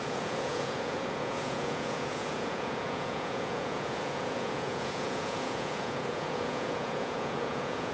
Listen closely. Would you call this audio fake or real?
fake